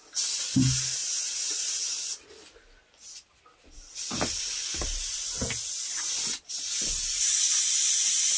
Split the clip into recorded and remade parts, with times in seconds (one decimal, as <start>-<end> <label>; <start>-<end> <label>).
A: 0.0-8.4 recorded